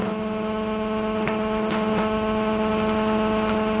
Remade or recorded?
remade